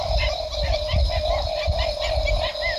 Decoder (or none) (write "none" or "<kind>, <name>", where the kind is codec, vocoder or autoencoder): none